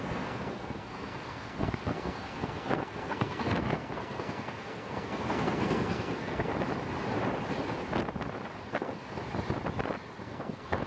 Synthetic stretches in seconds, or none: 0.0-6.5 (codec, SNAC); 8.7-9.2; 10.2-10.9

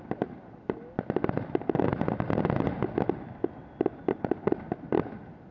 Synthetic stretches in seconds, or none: none

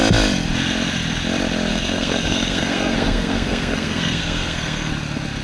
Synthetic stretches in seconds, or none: 1.7-4.9 (codec, SNAC)

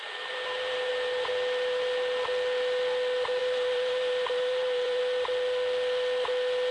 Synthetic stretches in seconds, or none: 0.0-0.9 (vocoder, BigVGAN v2); 3.4-5.0